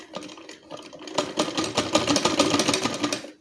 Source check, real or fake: real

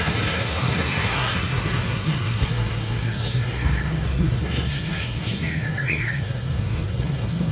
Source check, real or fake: fake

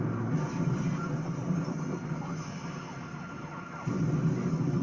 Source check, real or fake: real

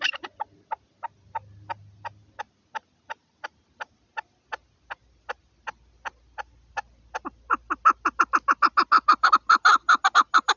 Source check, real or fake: real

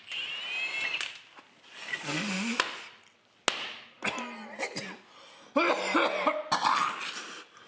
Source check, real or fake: real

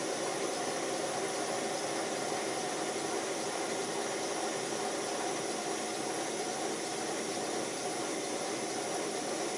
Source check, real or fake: real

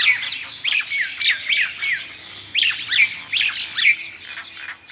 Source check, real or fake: real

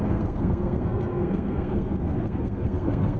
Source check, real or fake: fake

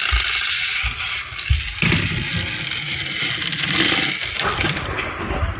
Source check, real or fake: real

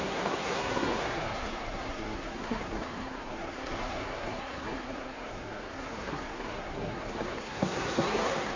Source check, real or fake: fake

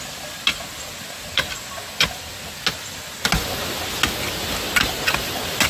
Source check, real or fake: real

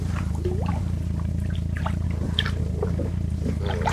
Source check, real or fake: real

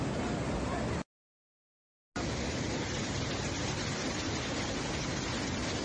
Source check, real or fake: real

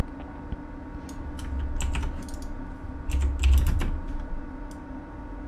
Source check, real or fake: real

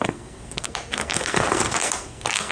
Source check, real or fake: fake